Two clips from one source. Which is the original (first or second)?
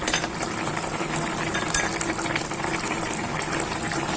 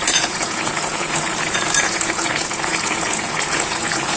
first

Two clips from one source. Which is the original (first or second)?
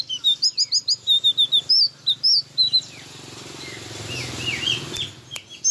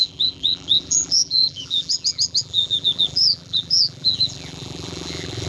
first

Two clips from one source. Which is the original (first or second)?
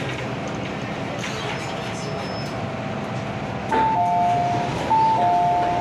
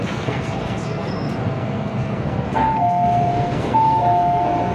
first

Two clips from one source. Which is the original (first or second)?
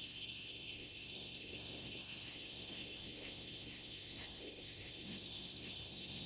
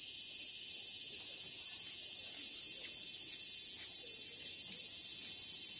second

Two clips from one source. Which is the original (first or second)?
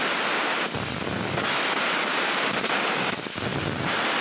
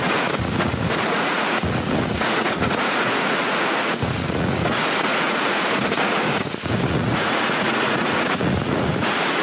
first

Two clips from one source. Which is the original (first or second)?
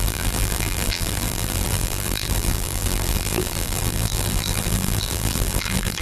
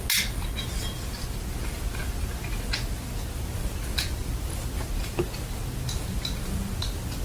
second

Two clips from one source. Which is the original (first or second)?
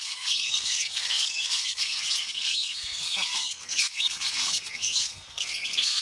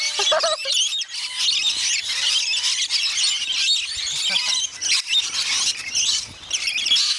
second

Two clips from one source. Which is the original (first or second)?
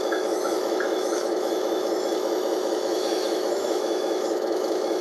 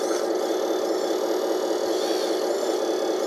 second